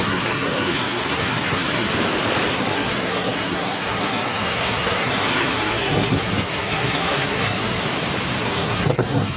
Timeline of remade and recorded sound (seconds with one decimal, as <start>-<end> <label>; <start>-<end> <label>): 0.0-1.9 remade; 1.9-2.5 recorded; 2.5-7.8 remade; 7.8-8.4 recorded; 8.4-9.4 remade